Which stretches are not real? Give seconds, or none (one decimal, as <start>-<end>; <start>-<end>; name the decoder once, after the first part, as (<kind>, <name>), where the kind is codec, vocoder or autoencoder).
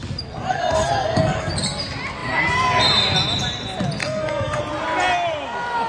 0.5-1.5 (codec, SNAC); 4.0-4.6